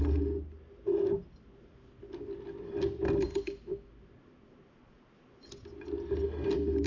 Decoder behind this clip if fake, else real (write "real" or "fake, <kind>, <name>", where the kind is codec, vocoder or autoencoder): real